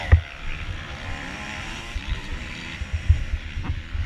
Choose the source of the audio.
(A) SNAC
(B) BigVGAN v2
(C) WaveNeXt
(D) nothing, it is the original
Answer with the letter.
B